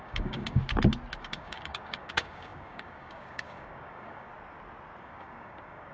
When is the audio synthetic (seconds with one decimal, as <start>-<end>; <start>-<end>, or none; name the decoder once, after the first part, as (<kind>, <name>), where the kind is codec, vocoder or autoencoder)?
0.0-0.6 (codec, DAC); 1.2-4.3; 5.0-5.9